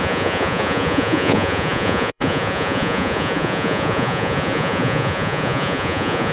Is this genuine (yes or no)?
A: no